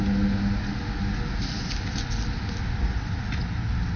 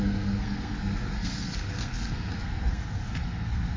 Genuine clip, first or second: first